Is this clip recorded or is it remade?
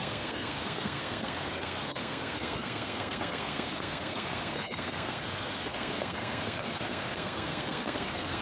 remade